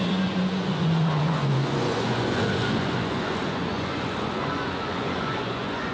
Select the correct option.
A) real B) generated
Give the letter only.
B